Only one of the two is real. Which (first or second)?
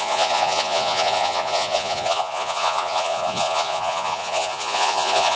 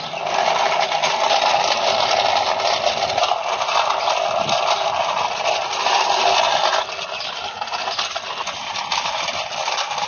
second